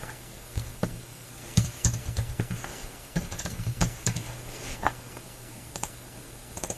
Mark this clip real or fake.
fake